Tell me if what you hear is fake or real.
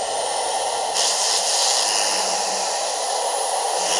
real